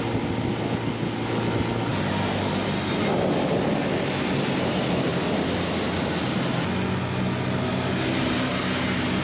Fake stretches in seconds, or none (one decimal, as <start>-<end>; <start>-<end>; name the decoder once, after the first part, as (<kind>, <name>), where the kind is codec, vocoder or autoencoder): 1.9-2.9 (vocoder, BigVGAN v2); 8.1-8.6